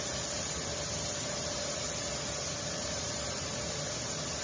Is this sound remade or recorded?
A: recorded